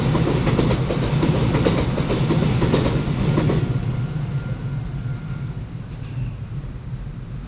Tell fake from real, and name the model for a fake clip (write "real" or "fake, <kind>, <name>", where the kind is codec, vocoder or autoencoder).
real